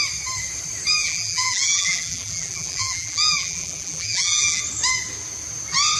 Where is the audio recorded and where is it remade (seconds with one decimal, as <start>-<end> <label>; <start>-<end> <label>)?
0.0-1.0 recorded; 1.0-4.6 remade; 4.6-6.0 recorded